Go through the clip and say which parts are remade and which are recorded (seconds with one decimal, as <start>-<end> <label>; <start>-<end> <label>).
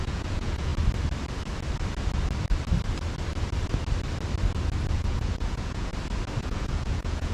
0.0-0.7 remade; 0.7-4.9 recorded; 4.9-5.9 remade; 5.9-6.4 recorded; 6.4-7.3 remade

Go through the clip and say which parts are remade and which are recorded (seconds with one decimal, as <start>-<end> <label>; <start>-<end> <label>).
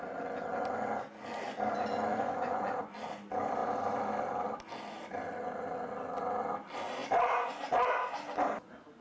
0.0-2.1 recorded; 2.1-2.9 remade; 2.9-9.0 recorded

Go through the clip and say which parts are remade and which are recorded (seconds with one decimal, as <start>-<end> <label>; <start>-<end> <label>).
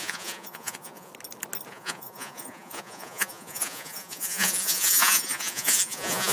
0.0-1.1 remade; 1.1-1.7 recorded; 1.7-6.3 remade